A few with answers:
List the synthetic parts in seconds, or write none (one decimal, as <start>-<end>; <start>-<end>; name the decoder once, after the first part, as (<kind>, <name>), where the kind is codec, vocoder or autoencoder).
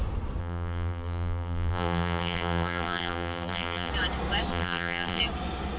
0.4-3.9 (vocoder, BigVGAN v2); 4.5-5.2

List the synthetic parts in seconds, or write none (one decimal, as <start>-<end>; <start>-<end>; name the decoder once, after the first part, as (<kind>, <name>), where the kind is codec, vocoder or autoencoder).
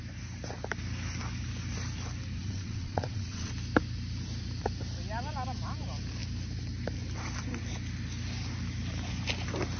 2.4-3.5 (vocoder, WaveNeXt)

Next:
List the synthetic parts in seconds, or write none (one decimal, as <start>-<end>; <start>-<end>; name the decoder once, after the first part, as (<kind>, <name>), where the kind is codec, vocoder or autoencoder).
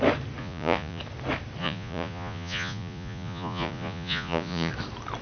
0.4-1.0 (vocoder, Vocos); 1.6-4.7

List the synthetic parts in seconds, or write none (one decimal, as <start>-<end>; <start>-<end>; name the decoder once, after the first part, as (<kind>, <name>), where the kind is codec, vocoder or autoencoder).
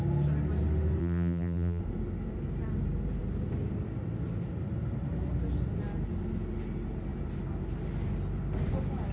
1.0-1.8 (vocoder, BigVGAN v2)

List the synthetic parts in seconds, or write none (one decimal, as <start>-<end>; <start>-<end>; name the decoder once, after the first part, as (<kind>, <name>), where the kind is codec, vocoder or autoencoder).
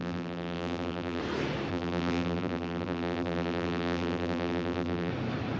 0.0-1.2 (vocoder, BigVGAN v2); 1.7-5.1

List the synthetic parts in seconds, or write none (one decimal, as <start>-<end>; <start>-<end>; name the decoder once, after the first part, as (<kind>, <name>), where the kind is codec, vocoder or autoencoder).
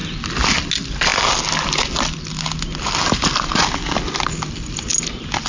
none